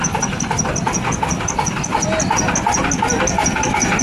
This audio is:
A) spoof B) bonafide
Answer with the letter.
B